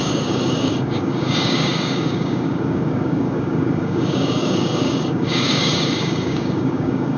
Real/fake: fake